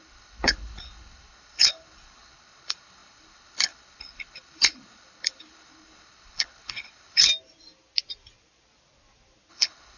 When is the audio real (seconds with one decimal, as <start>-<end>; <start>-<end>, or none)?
7.3-9.5